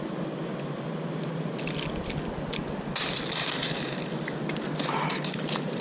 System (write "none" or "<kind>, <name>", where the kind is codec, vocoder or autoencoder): none